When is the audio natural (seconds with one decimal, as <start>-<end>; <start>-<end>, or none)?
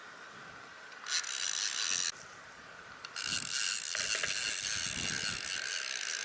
0.0-6.2